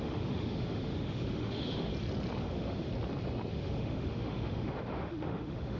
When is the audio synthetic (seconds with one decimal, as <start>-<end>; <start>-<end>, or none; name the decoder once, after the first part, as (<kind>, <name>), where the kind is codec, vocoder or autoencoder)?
0.0-1.9 (autoencoder, DAC-VAE); 2.4-2.9; 3.5-5.8